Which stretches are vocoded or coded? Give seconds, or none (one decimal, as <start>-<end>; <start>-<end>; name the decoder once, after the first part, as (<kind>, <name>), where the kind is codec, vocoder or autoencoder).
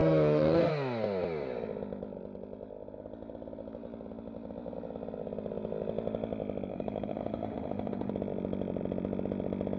0.0-0.7 (autoencoder, DAC-VAE); 6.7-8.1